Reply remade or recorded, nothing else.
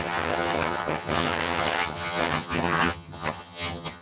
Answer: remade